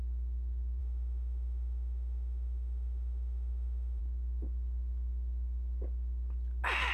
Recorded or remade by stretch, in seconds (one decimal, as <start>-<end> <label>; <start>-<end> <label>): 0.0-0.8 recorded; 0.8-4.0 remade; 4.0-6.9 recorded